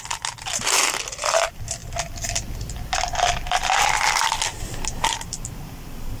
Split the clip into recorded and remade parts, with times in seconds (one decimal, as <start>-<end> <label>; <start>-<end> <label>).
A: 0.0-6.2 recorded